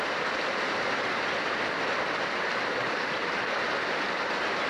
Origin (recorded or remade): remade